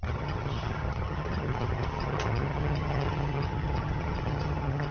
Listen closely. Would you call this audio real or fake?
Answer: fake